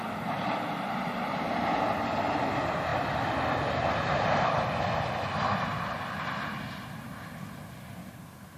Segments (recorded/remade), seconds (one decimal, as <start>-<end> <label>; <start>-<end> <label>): 0.0-8.6 recorded